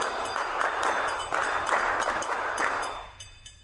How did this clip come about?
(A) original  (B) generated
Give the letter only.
B